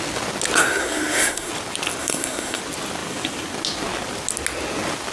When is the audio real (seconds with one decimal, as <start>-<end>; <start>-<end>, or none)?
0.0-0.6; 1.5-2.0; 2.6-5.1